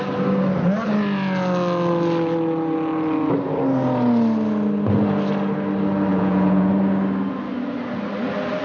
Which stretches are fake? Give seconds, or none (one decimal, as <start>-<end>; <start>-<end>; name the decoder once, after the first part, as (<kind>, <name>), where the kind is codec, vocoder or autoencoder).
6.1-6.7 (vocoder, Vocos)